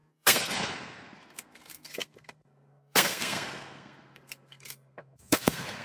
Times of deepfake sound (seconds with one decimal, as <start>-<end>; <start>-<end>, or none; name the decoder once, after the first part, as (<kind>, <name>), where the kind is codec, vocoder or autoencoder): 0.0-5.8 (codec, SNAC)